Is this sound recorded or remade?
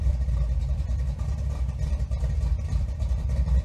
remade